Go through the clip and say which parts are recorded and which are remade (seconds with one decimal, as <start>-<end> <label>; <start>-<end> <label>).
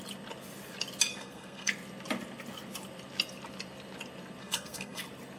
0.0-1.1 recorded; 1.1-1.7 remade; 1.7-4.4 recorded; 4.4-5.0 remade; 5.0-5.4 recorded